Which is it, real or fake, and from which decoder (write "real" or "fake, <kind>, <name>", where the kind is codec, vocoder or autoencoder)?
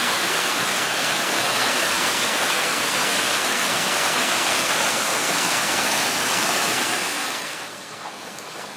fake, codec, SNAC